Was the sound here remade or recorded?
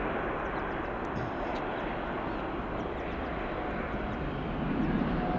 recorded